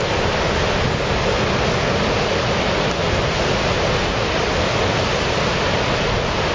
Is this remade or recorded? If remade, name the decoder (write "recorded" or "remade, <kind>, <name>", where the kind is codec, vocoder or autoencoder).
recorded